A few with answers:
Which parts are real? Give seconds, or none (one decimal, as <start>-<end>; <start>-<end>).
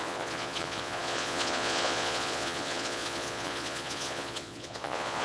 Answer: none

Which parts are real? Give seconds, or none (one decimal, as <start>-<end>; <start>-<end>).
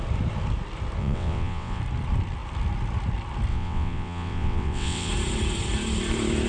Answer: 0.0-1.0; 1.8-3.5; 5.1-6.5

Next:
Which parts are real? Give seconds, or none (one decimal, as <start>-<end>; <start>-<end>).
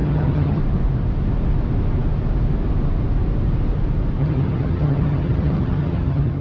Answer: 0.6-4.2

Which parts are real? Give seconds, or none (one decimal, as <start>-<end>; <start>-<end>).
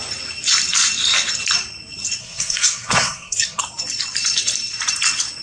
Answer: 0.0-2.2; 3.6-5.4